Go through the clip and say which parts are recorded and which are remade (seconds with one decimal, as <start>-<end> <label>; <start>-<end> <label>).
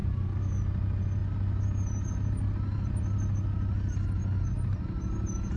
0.0-0.6 remade; 0.6-5.6 recorded